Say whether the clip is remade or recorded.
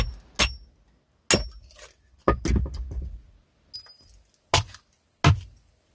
recorded